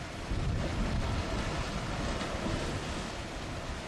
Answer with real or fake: real